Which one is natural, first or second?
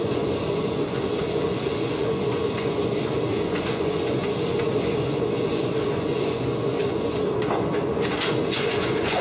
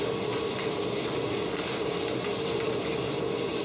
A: second